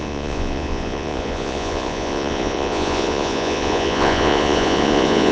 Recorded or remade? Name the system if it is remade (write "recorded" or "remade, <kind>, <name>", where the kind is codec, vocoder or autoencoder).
remade, vocoder, Vocos